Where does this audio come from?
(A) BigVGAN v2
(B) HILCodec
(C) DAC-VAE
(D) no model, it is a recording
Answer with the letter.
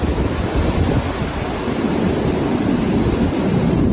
D